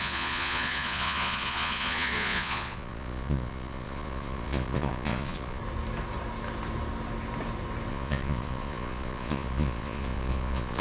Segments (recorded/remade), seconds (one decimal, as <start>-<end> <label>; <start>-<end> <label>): 0.0-5.6 remade; 5.6-7.9 recorded; 7.9-10.8 remade